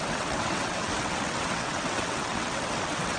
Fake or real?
fake